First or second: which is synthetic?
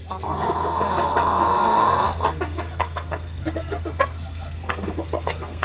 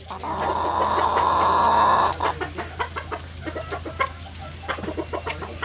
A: first